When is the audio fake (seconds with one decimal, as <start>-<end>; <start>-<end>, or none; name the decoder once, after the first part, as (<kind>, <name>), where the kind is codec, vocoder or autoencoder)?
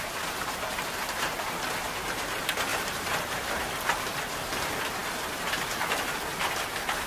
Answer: 2.7-4.2 (vocoder, BigVGAN v2)